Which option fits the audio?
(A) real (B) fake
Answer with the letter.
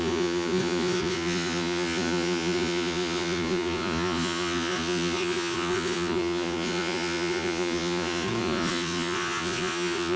B